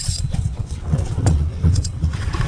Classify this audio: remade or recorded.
remade